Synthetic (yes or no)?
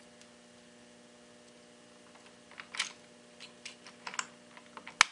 no